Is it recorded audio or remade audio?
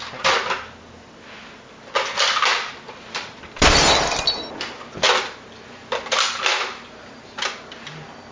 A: recorded